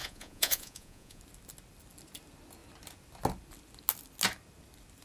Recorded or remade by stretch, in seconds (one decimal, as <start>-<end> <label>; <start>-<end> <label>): 0.0-1.2 remade; 1.2-5.0 recorded